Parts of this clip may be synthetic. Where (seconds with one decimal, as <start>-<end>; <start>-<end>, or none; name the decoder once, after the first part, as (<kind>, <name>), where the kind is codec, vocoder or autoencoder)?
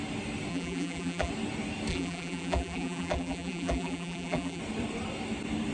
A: 0.5-1.3 (vocoder, BigVGAN v2); 1.9-4.6